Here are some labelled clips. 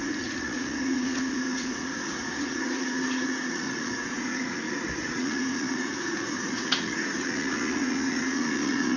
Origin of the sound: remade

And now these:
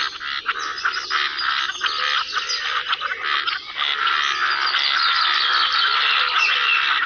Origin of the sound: recorded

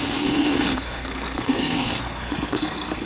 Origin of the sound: remade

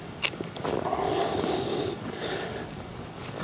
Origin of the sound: remade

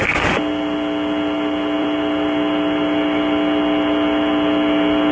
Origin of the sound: recorded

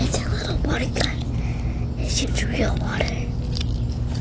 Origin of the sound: recorded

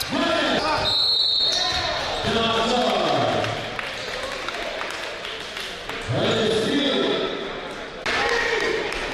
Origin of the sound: recorded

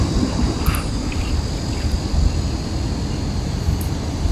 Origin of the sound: recorded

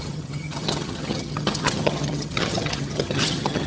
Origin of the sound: remade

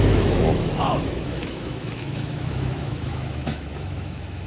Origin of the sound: remade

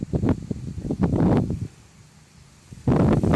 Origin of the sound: recorded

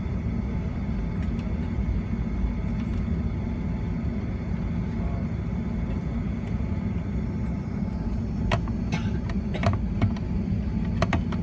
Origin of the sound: recorded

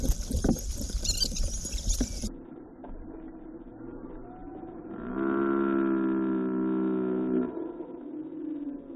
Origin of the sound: recorded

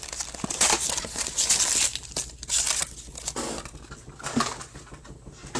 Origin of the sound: recorded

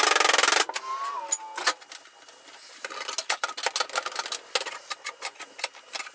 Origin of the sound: recorded